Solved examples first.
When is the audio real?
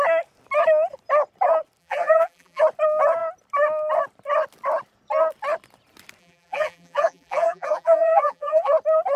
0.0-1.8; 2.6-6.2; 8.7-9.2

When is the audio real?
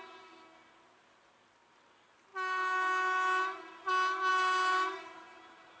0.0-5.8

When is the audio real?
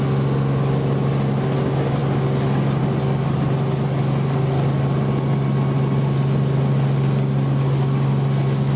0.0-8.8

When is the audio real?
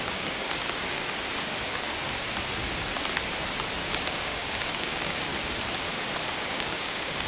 1.0-3.8; 5.3-6.3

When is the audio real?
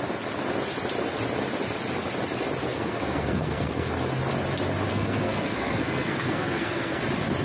0.0-2.7; 3.9-4.9; 7.0-7.4